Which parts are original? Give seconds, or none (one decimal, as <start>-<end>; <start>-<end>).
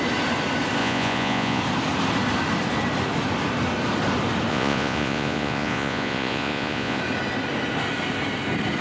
0.0-0.8; 1.6-4.5; 7.0-8.8